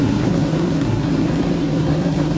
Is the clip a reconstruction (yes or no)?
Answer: yes